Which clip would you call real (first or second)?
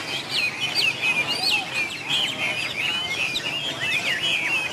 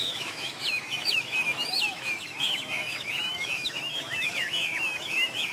first